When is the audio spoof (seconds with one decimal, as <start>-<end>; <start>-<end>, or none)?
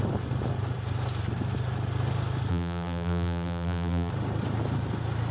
2.5-4.1